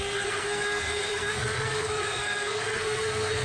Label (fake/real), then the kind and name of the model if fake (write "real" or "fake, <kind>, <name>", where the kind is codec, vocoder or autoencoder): fake, codec, SNAC